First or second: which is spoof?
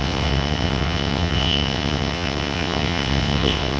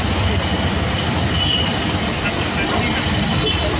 first